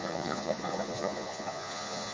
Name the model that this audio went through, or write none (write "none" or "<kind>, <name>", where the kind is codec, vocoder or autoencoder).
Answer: vocoder, Vocos